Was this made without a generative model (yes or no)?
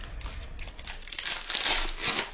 yes